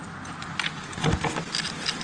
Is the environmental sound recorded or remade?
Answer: recorded